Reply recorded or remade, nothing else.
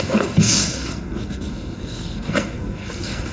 remade